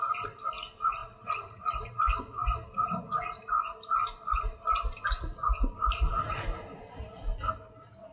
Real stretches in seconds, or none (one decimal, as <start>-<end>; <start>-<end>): 0.0-1.0; 1.9-8.1